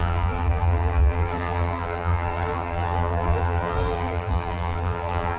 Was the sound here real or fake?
fake